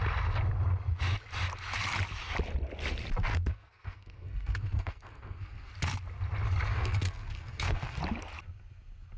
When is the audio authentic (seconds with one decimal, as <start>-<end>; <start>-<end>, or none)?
0.0-3.3; 5.7-6.7; 8.0-9.2